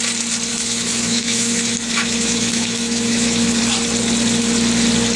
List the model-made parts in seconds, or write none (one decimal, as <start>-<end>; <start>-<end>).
0.5-3.6